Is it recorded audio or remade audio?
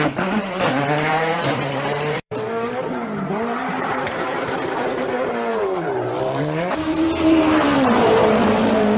remade